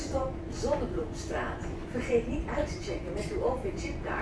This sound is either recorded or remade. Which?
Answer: remade